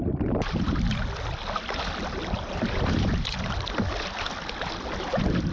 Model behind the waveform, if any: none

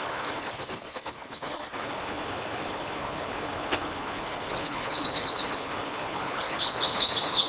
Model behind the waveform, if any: codec, HILCodec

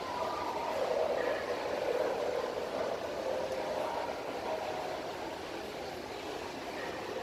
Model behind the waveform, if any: none